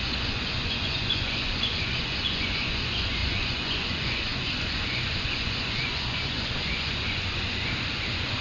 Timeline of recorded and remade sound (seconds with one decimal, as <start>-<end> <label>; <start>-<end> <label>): 0.0-8.4 remade

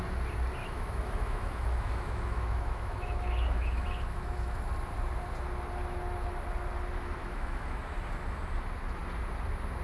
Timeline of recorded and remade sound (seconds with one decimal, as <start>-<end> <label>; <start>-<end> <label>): 0.0-0.6 recorded; 0.6-4.6 remade; 4.6-7.2 recorded; 7.2-7.8 remade; 7.8-9.8 recorded

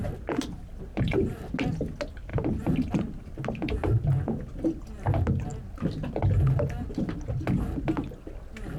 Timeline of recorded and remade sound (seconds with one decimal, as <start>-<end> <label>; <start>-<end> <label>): 0.0-8.8 recorded

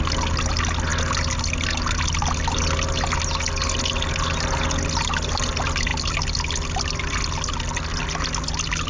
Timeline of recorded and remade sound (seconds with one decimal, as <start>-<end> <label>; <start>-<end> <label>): 0.0-8.9 recorded

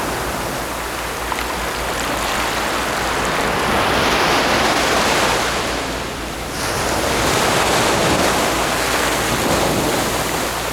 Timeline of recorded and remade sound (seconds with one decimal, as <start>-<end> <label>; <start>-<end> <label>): 0.0-8.6 recorded; 8.6-9.3 remade; 9.3-10.7 recorded

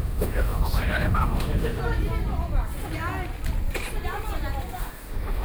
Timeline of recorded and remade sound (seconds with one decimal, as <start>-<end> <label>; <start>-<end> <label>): 0.0-1.8 remade; 1.8-4.8 recorded; 4.8-5.4 remade